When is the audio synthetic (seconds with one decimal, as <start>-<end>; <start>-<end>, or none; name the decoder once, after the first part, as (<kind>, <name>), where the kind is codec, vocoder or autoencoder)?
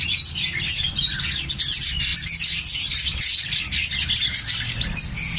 none